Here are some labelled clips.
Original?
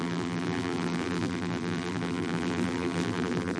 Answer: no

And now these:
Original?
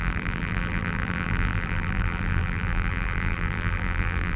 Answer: no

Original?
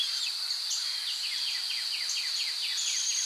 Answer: yes